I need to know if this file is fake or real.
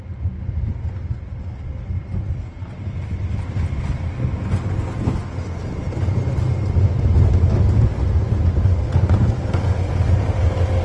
real